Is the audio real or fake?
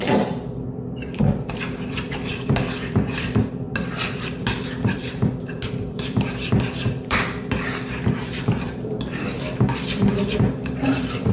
fake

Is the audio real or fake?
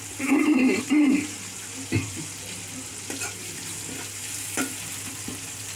real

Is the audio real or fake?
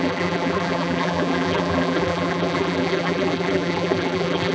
fake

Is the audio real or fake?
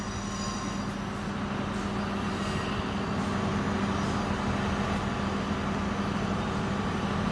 real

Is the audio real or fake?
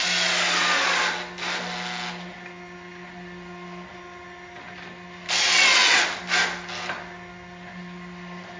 real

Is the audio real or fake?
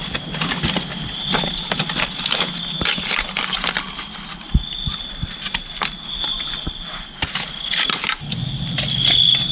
real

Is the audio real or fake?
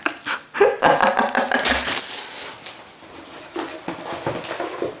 real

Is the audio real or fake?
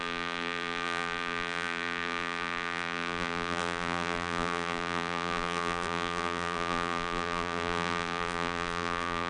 fake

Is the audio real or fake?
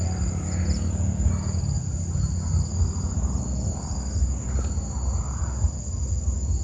real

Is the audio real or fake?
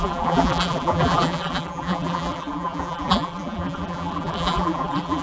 fake